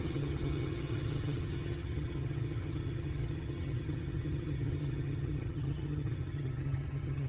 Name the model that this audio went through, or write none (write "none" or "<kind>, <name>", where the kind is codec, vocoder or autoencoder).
vocoder, HiFi-GAN